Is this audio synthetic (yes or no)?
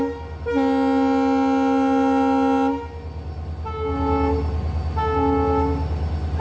no